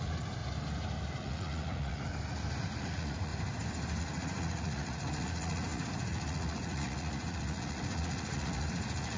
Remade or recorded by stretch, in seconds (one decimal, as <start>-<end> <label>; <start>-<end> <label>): 0.0-0.4 remade; 0.4-1.1 recorded; 1.1-2.1 remade; 2.1-2.8 recorded; 2.8-3.3 remade; 3.3-4.0 recorded; 4.0-9.2 remade